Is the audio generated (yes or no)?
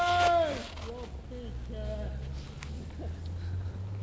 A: no